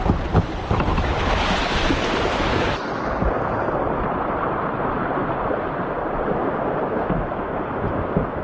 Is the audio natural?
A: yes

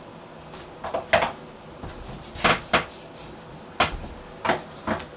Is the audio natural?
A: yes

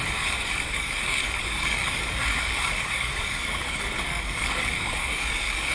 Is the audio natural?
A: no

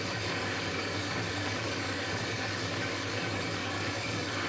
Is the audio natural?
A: no